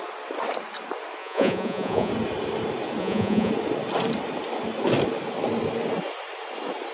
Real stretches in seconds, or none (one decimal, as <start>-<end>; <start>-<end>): 0.0-1.2; 2.1-3.0; 3.5-6.9